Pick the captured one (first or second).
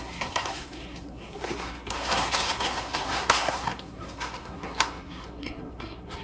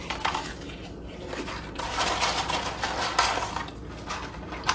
second